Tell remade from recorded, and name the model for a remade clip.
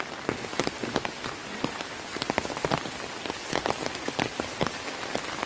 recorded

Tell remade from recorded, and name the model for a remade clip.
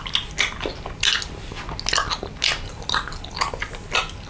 recorded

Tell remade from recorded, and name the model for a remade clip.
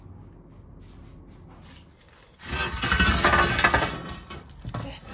recorded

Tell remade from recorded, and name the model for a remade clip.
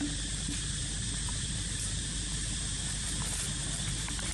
remade, vocoder, BigVGAN v2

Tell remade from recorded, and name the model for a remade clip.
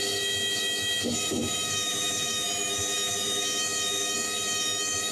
remade, autoencoder, DAC-VAE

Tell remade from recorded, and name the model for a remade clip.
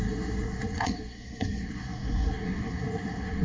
remade, codec, SNAC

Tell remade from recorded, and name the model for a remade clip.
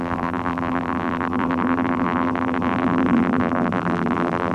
remade, vocoder, BigVGAN v2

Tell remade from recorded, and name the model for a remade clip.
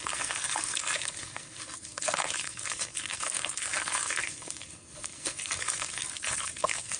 remade, codec, SNAC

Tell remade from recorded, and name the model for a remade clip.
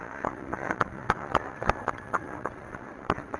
remade, vocoder, WaveNeXt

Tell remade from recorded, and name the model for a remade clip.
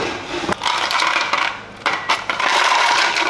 remade, vocoder, BigVGAN v2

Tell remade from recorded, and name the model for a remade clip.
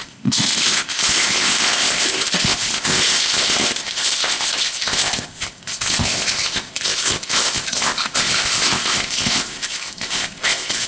remade, codec, ZipCodec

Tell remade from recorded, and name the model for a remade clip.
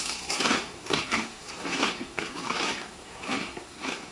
remade, codec, SNAC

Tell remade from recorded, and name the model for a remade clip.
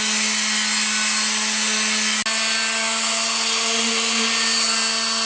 recorded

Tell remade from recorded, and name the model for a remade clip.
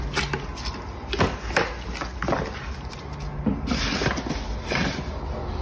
recorded